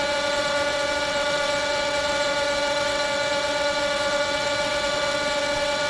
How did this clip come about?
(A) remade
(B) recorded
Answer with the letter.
A